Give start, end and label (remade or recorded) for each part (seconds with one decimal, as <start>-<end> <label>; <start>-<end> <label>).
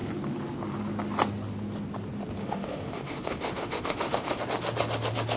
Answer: 0.0-2.4 recorded; 2.4-4.4 remade; 4.4-5.4 recorded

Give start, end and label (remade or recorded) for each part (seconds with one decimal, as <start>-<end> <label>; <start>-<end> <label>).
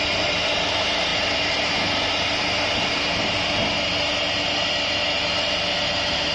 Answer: 0.0-6.3 recorded